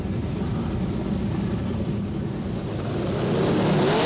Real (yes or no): yes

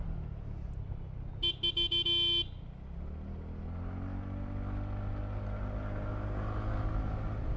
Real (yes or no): yes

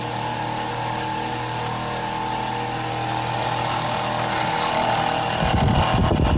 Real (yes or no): yes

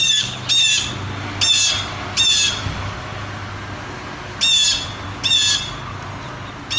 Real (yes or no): yes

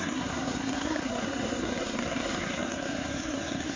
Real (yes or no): no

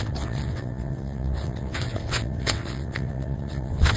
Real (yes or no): no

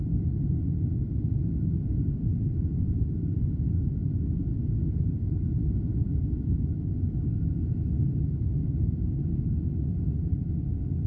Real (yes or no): yes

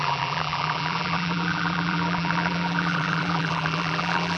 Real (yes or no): no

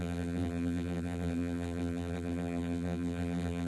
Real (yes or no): no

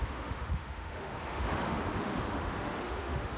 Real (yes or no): no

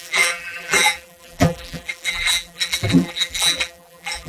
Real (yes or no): no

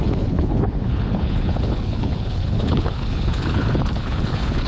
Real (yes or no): no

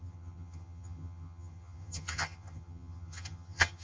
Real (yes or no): no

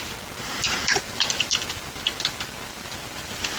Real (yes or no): yes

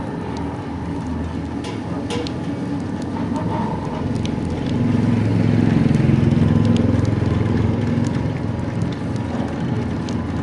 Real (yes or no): yes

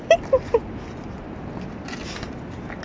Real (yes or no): yes